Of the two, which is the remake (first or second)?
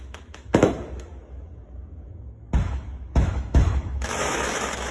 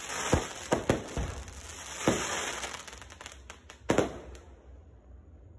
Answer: first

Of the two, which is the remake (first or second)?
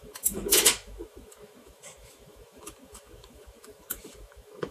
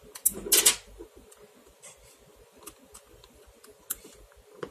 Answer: first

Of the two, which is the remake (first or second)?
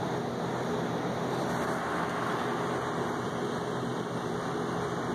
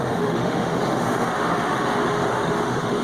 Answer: second